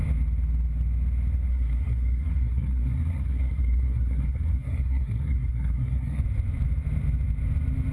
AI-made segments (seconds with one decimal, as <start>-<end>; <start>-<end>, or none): 1.5-6.2